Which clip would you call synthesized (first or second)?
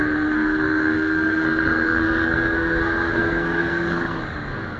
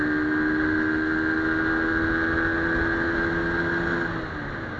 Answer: first